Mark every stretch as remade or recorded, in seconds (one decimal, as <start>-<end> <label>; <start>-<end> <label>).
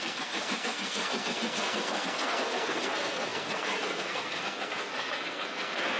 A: 0.0-6.0 remade